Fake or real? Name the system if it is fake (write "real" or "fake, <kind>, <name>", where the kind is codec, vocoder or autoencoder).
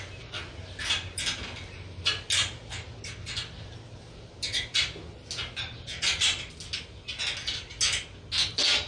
real